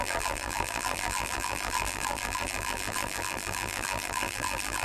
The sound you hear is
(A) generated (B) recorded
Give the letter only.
A